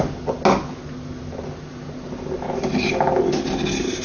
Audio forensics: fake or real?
real